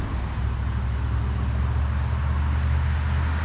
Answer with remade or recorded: recorded